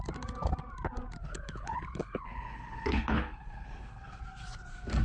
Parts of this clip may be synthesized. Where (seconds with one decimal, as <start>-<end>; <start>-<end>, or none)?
1.2-4.2